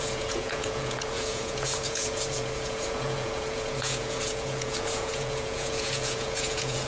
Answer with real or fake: fake